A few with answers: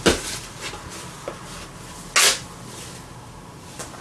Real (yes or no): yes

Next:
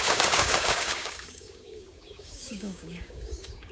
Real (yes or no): no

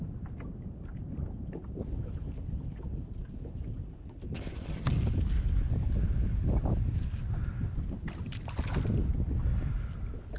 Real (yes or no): yes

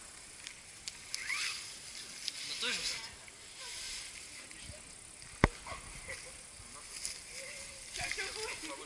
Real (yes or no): yes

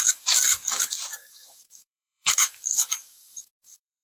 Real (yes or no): no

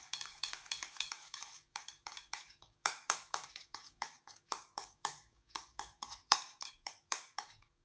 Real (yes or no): no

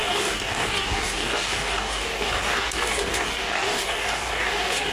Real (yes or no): no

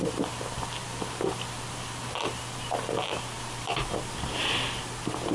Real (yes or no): yes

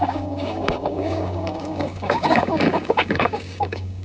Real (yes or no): no